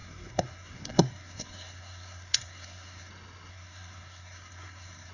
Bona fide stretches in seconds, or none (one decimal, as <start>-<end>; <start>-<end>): 3.1-3.5